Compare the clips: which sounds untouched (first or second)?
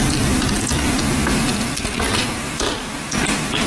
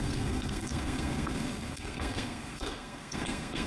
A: first